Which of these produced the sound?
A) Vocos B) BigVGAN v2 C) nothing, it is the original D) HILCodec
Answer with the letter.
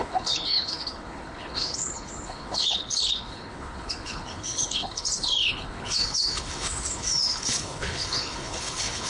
D